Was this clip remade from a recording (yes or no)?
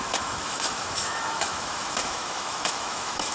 yes